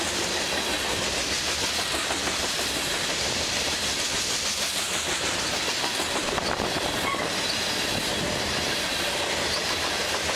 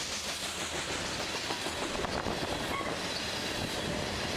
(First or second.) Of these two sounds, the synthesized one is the first